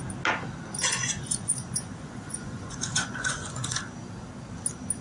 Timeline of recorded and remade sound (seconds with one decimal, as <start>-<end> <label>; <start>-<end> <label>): 0.0-0.8 recorded; 0.8-3.8 remade; 3.8-5.0 recorded